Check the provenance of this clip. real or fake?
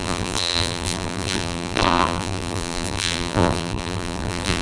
fake